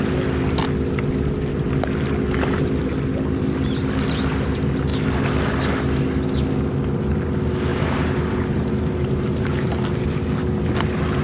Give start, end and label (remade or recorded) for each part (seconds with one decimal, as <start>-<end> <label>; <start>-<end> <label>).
0.0-7.7 recorded; 7.7-9.9 remade; 9.9-11.2 recorded